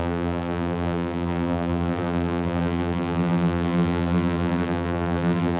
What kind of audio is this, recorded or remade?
remade